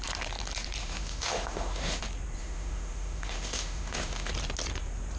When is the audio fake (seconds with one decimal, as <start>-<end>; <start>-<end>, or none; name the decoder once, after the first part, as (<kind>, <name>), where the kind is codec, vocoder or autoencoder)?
0.8-2.0 (autoencoder, DAC-VAE); 2.4-4.3